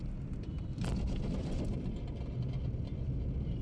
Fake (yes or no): no